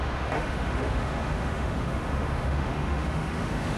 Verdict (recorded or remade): remade